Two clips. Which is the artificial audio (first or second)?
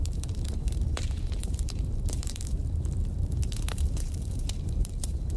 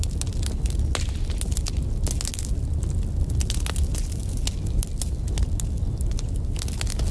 first